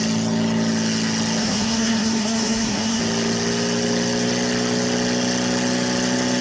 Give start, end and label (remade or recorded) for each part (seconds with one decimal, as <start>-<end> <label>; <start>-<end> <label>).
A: 0.0-1.4 recorded; 1.4-3.0 remade; 3.0-6.4 recorded